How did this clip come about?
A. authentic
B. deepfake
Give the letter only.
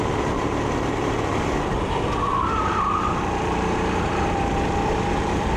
A